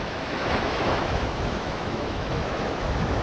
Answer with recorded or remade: remade